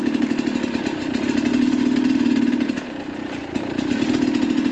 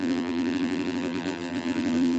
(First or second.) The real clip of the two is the first